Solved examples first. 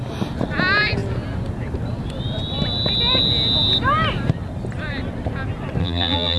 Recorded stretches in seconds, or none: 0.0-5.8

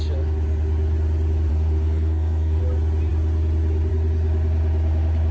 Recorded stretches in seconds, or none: 0.0-1.5; 2.6-5.3

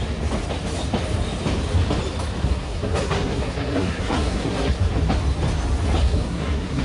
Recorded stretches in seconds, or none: 0.0-2.4; 4.9-6.0

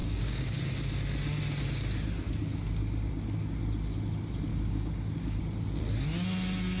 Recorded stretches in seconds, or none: 0.6-4.5; 5.4-6.8

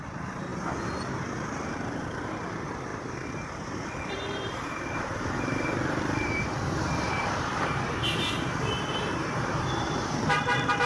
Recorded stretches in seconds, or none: 0.5-1.1

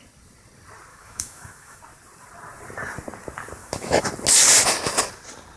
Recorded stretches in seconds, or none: 0.0-0.9; 1.8-3.6; 4.1-5.6